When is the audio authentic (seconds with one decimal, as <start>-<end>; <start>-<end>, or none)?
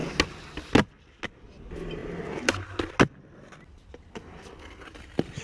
0.0-5.4